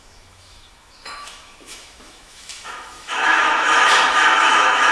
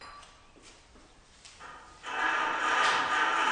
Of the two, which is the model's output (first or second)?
first